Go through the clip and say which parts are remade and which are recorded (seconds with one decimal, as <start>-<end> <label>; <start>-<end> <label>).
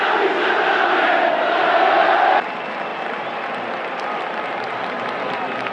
0.0-5.7 recorded